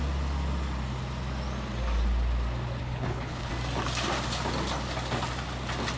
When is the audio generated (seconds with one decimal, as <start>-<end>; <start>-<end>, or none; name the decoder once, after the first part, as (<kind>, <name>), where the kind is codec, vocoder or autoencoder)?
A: 2.8-3.5 (codec, HILCodec)